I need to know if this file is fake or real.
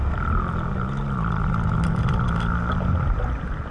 real